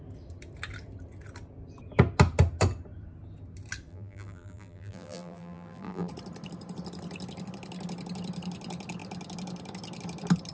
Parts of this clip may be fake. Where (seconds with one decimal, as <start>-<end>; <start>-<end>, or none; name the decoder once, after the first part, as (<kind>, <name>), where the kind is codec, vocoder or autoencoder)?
3.9-6.1 (vocoder, BigVGAN v2)